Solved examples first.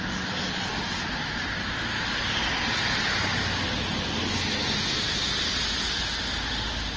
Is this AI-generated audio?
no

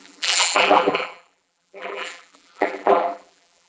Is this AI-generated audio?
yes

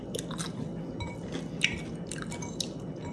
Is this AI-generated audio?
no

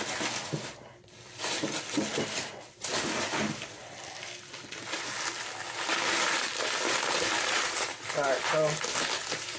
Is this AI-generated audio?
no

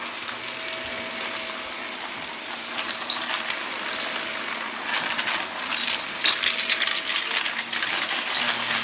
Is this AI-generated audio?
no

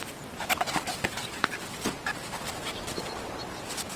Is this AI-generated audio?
no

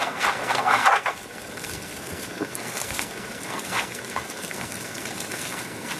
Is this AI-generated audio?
yes